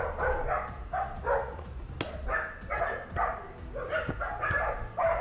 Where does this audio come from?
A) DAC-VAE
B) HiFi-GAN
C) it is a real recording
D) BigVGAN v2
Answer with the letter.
C